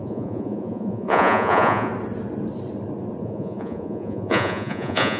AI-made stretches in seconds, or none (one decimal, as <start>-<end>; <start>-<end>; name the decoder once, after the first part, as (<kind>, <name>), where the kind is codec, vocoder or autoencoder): 0.0-1.9 (vocoder, Vocos); 3.2-5.2